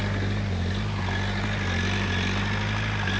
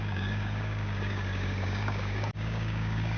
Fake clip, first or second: second